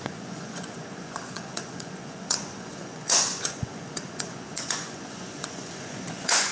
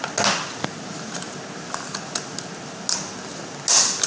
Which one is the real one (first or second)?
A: second